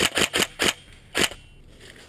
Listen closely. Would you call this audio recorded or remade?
recorded